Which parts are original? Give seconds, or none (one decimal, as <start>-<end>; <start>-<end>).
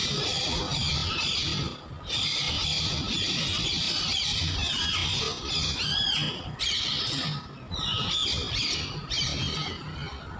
4.1-6.6; 8.2-10.4